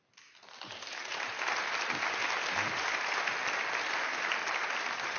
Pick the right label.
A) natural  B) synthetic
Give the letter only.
A